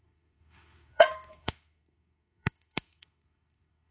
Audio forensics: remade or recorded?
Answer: remade